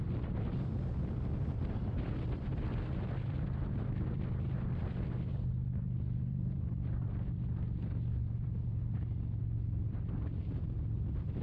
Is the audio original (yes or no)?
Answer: no